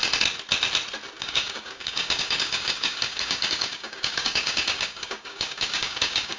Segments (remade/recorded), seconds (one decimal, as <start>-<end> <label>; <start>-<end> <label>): 0.0-1.2 recorded; 1.2-6.4 remade